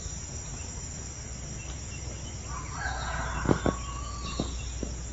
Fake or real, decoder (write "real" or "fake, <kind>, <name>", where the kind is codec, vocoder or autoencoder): real